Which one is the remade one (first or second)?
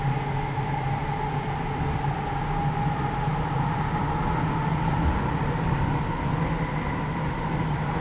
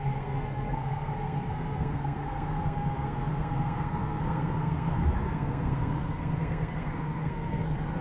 second